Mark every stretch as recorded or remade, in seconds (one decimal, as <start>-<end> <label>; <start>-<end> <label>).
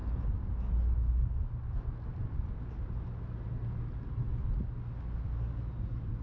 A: 0.0-6.2 recorded